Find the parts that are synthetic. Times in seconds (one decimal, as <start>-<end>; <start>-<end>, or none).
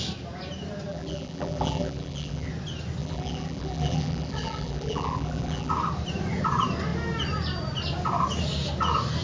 0.9-2.5; 3.0-5.7